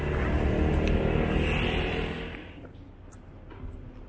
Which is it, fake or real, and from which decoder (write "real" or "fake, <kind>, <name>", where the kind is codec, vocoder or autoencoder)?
real